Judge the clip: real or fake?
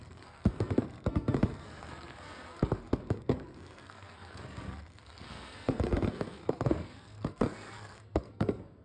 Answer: fake